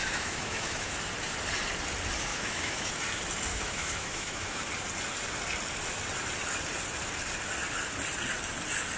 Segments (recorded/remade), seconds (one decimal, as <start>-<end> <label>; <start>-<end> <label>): 0.0-0.9 remade; 0.9-2.3 recorded; 2.3-2.9 remade; 2.9-3.5 recorded; 3.5-4.6 remade; 4.6-9.0 recorded